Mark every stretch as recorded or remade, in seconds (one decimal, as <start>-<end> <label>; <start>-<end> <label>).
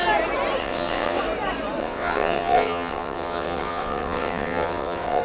0.0-0.6 recorded; 0.6-1.2 remade; 1.2-1.8 recorded; 1.8-5.2 remade